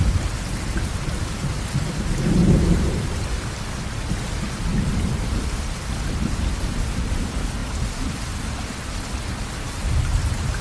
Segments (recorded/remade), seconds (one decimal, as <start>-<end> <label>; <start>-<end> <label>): 0.0-10.6 recorded